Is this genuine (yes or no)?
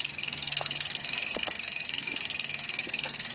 no